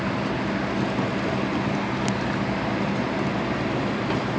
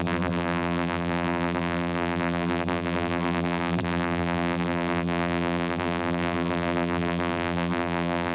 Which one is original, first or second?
first